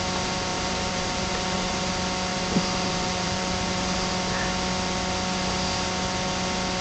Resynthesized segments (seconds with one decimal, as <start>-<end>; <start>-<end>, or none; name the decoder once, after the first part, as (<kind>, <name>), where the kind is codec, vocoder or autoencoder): 0.5-1.9 (vocoder, BigVGAN v2); 2.3-4.1